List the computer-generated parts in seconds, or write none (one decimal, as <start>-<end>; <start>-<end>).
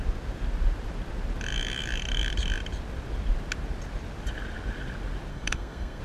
5.3-6.0